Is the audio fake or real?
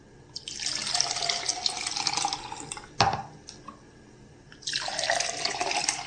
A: real